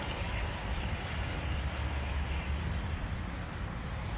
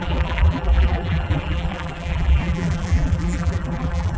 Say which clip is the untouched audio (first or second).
first